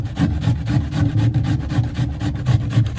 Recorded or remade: recorded